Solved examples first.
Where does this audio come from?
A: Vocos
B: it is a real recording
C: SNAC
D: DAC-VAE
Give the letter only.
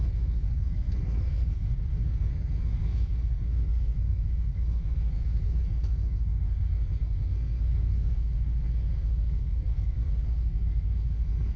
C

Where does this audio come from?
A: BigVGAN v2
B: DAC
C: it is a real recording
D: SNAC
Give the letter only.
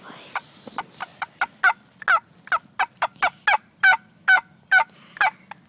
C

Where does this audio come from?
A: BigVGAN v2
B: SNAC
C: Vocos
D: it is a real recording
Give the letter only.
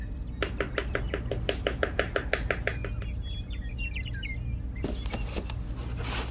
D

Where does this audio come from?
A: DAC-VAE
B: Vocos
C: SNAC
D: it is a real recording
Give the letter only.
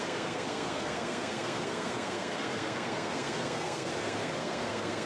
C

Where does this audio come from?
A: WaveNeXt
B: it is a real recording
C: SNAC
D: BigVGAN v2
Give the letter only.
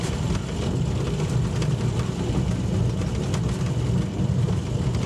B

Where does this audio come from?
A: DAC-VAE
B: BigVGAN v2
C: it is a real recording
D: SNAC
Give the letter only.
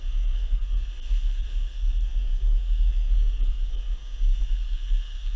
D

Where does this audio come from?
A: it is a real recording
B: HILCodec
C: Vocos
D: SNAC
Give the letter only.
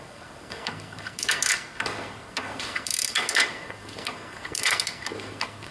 D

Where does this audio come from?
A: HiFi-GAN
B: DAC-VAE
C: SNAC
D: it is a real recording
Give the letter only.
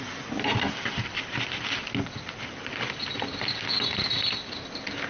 D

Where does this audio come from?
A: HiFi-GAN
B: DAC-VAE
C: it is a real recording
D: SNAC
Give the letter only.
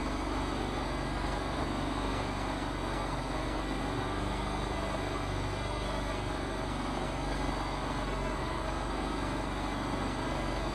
D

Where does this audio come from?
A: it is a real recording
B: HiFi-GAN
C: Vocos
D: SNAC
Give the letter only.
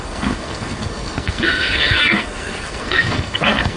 D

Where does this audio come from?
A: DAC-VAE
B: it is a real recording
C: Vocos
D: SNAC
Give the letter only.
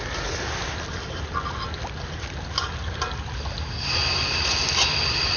B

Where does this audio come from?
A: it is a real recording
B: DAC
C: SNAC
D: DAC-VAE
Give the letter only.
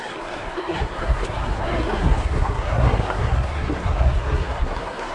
C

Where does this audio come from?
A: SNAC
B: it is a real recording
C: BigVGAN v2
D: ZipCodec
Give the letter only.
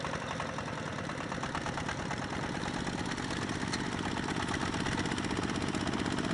B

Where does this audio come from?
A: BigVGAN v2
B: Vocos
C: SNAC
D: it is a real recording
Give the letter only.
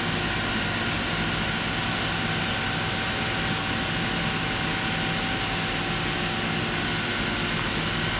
D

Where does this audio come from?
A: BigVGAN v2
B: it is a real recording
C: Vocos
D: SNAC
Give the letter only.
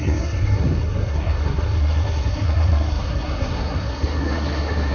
D